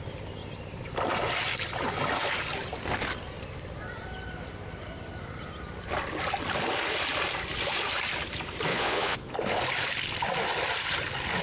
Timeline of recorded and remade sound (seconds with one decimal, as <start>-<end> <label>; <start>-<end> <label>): 0.0-8.7 recorded; 8.7-9.3 remade; 9.3-11.4 recorded